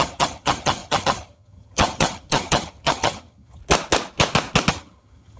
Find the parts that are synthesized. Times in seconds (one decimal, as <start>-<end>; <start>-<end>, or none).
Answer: 0.0-3.6; 4.7-5.4